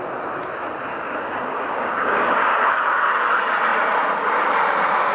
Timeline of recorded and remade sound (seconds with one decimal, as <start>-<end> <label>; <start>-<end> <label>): 0.0-0.9 recorded; 0.9-3.3 remade; 3.3-5.1 recorded